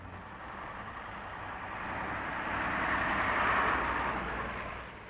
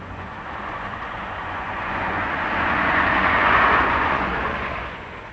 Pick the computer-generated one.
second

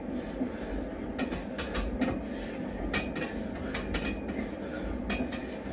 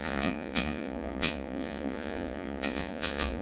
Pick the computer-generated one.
second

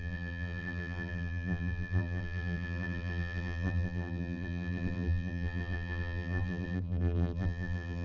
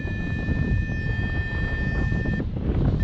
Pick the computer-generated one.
first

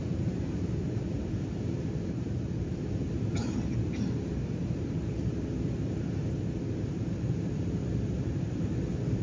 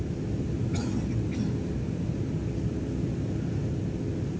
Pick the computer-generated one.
first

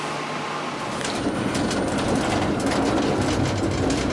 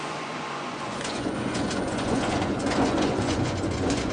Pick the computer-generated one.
second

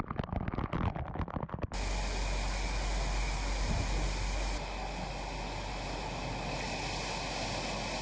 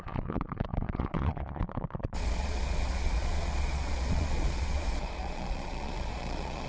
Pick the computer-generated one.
second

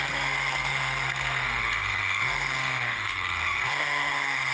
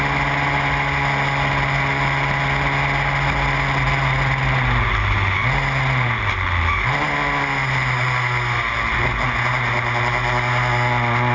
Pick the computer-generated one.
first